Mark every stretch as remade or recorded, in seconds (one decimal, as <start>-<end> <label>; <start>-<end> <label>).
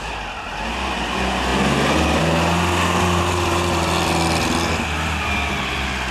0.0-6.1 recorded